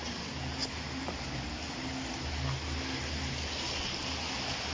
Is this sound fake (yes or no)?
no